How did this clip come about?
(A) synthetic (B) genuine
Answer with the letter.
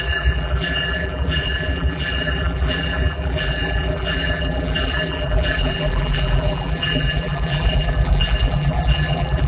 A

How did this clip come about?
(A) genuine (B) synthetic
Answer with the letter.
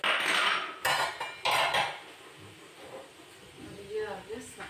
A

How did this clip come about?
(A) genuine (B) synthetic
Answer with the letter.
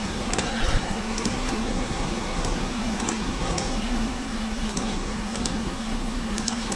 B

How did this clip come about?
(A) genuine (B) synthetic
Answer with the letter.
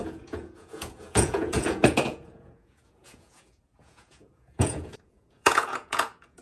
B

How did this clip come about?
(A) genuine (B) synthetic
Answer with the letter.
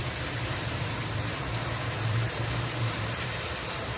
B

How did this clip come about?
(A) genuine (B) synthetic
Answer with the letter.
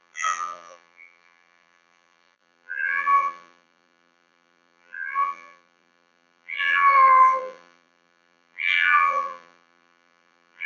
B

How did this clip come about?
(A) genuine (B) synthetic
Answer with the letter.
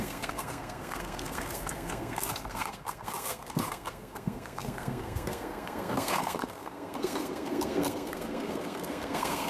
B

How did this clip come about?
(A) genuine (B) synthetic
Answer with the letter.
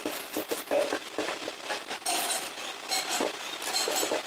A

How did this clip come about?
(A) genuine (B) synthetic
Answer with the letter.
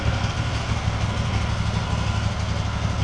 B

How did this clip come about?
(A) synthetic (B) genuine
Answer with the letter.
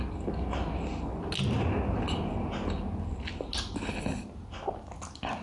B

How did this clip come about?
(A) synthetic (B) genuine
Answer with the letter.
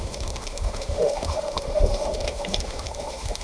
A